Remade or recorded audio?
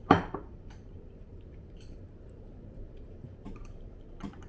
remade